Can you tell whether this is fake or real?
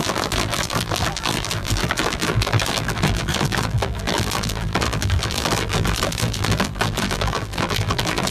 fake